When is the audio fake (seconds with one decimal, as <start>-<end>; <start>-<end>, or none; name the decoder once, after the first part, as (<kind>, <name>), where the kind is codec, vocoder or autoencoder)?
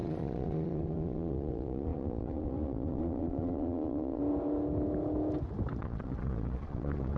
0.0-4.2 (vocoder, Vocos); 5.8-7.2